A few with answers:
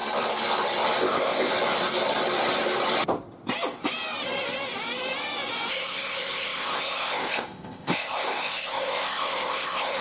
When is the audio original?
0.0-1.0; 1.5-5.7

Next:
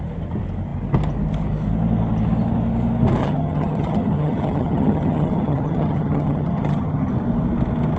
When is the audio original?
0.0-3.2; 7.1-8.0

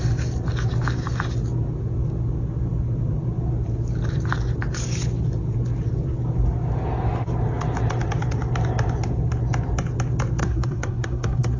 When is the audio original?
0.0-10.4

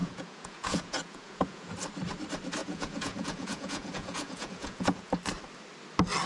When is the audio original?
1.7-2.6; 5.1-6.3

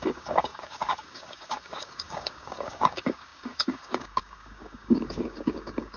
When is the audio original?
none